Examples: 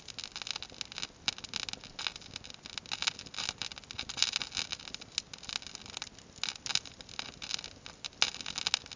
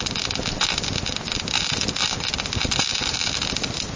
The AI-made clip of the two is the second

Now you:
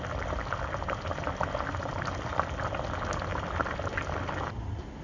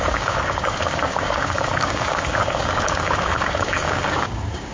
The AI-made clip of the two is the second